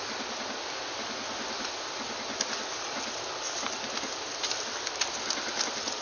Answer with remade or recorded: recorded